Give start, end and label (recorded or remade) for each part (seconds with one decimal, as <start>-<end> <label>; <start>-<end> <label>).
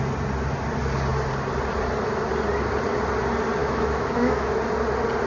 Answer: 0.0-3.6 recorded; 3.6-4.6 remade; 4.6-5.3 recorded